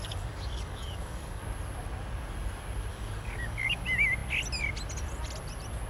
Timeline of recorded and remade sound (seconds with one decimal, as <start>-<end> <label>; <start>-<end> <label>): 0.0-1.4 remade; 1.4-2.9 recorded; 2.9-3.8 remade; 3.8-5.9 recorded